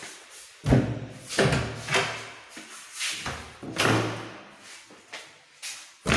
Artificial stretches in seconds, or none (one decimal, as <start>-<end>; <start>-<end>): none